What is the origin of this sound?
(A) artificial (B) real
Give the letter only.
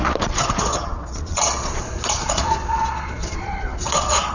A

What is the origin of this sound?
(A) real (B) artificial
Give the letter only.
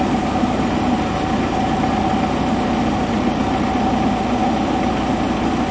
A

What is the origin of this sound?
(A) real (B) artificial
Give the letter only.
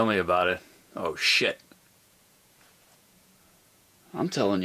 B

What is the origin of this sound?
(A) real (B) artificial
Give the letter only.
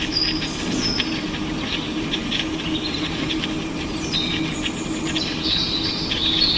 A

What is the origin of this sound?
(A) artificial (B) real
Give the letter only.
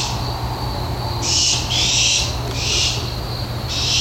B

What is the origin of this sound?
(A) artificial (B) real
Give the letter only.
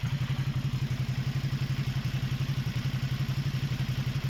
B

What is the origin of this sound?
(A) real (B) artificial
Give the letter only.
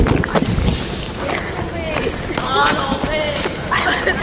A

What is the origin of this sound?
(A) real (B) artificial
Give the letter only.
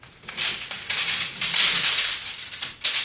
A